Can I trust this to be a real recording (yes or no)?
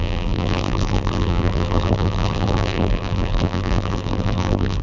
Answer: no